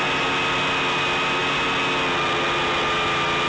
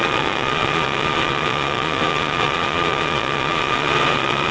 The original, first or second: first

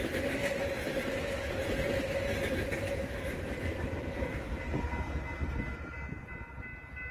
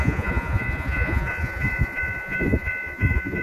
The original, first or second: first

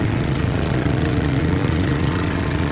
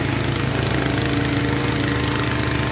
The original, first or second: second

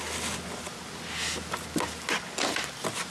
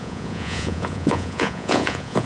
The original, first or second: first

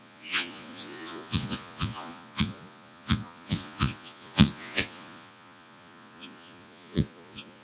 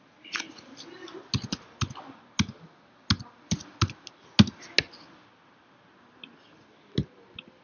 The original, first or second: second